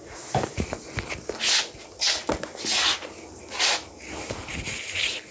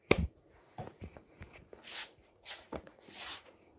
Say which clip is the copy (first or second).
second